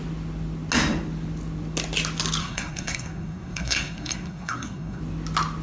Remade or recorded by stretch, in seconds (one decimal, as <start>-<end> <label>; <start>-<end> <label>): 0.0-2.4 recorded; 2.4-5.0 remade; 5.0-5.6 recorded